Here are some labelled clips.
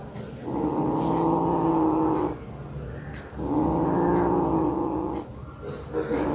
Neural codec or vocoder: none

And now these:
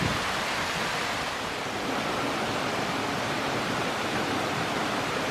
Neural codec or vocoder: vocoder, BigVGAN v2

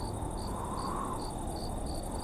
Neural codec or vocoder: none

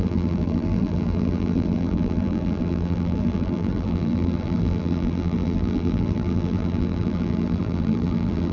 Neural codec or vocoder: vocoder, BigVGAN v2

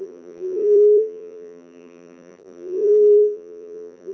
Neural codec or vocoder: vocoder, BigVGAN v2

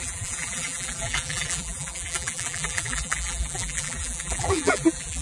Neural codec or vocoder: vocoder, BigVGAN v2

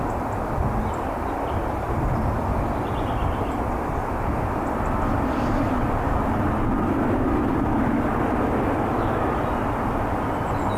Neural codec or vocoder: vocoder, BigVGAN v2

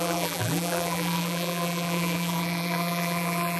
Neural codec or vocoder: vocoder, BigVGAN v2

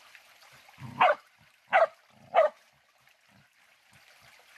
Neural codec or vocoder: none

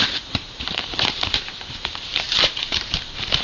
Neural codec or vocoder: vocoder, BigVGAN v2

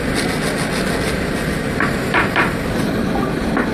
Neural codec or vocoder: none